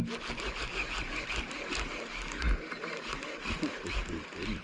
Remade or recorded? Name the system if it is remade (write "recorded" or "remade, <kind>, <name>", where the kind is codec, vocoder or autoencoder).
recorded